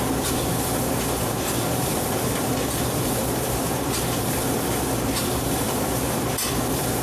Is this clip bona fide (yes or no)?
no